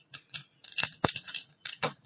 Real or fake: fake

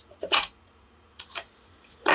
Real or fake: fake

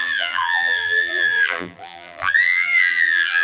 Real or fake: fake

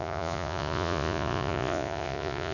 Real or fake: fake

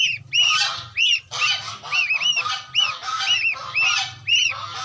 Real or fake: real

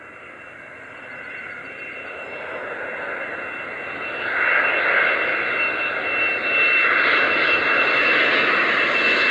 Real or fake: real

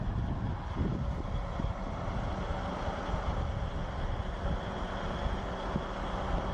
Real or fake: real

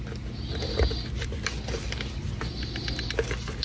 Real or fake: real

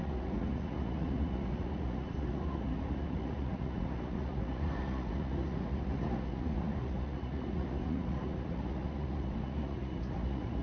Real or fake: fake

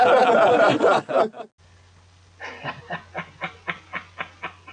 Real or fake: real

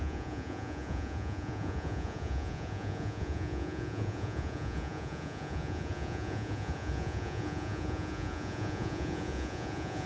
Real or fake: fake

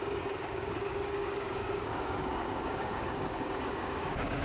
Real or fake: fake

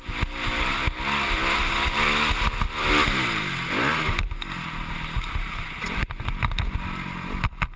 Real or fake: real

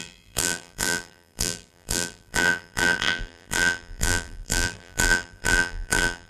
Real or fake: fake